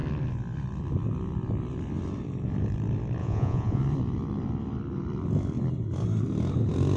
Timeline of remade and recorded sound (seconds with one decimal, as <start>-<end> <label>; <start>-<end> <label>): 0.0-3.2 recorded; 3.2-3.8 remade; 3.8-7.0 recorded